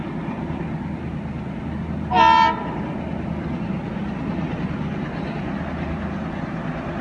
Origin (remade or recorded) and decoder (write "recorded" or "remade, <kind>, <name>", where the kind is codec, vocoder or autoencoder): recorded